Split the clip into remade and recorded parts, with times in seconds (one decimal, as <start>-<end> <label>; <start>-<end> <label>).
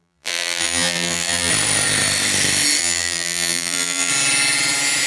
0.0-1.5 remade; 1.5-2.8 recorded; 2.8-4.1 remade; 4.1-5.1 recorded